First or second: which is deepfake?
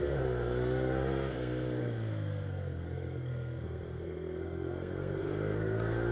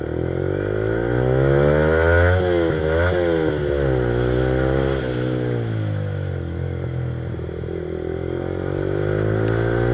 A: first